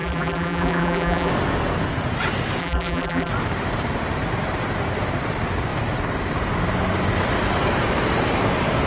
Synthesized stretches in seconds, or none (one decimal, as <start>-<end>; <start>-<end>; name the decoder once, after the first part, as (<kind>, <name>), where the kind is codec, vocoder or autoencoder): 0.0-1.3 (vocoder, BigVGAN v2); 2.6-3.3